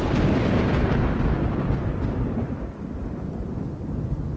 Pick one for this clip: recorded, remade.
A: recorded